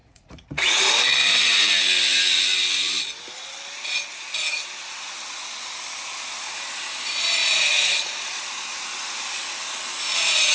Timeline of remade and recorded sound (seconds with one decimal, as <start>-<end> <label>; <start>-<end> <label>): 0.0-0.9 remade; 0.9-7.4 recorded; 7.4-8.4 remade; 8.4-10.5 recorded